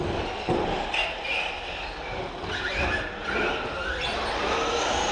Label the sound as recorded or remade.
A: recorded